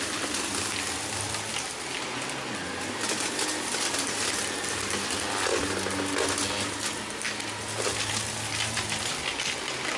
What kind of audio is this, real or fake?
real